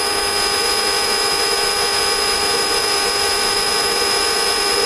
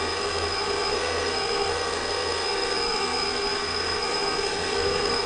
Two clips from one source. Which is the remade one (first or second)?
second